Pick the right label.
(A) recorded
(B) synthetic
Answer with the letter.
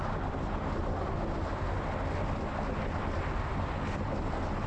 A